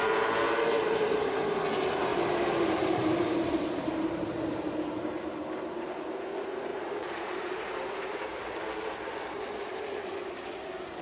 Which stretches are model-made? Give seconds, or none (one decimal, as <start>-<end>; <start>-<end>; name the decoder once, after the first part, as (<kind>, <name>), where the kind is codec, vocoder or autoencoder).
2.1-6.0 (vocoder, BigVGAN v2); 6.7-7.4; 9.6-10.1